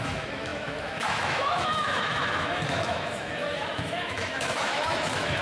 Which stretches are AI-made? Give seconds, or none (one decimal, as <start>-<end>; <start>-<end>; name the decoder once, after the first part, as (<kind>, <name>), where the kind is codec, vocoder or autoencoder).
0.0-5.4 (autoencoder, DAC-VAE)